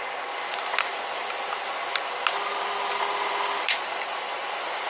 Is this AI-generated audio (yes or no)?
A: no